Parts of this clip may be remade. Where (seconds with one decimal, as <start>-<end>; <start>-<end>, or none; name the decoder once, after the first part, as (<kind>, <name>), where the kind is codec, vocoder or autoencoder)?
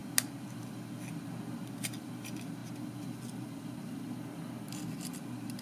none